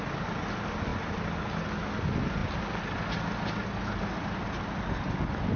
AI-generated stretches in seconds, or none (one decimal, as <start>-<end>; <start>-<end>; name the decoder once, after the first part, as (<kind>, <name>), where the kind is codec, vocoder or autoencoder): none